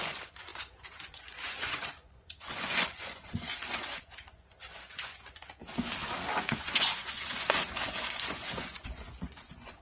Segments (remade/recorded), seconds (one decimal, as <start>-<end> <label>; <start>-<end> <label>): 0.0-5.6 remade; 5.6-6.4 recorded; 6.4-9.8 remade